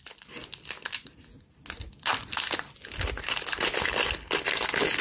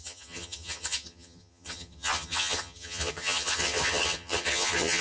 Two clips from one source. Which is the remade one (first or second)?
second